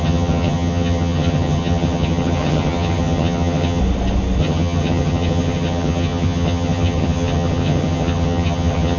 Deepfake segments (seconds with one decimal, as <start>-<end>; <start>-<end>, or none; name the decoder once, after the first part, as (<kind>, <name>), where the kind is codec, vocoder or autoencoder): 0.0-3.8 (vocoder, HiFi-GAN); 4.4-9.0